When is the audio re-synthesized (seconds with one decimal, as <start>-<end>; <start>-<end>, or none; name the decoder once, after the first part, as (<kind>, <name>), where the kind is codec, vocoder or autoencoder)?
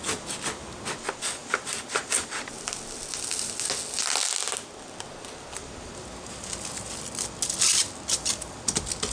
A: 1.4-2.5 (vocoder, BigVGAN v2)